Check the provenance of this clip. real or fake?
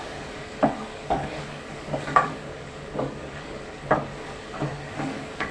fake